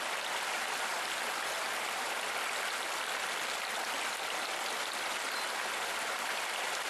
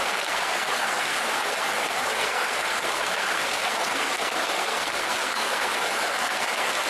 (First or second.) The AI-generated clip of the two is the second